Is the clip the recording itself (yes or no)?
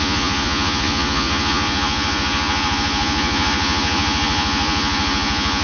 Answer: no